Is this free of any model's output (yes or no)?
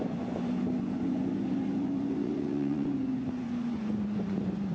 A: no